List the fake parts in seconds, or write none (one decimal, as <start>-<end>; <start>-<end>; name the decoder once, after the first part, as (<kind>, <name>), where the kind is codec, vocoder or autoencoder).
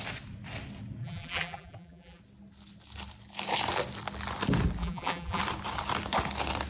1.0-2.2 (vocoder, BigVGAN v2); 4.8-5.4